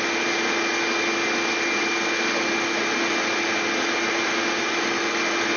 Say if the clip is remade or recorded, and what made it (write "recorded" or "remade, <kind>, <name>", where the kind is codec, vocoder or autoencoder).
recorded